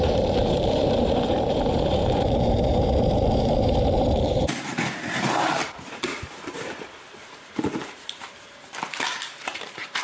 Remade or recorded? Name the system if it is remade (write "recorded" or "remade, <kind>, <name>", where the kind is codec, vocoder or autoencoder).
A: remade, vocoder, BigVGAN v2